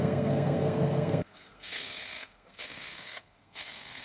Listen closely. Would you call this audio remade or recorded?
remade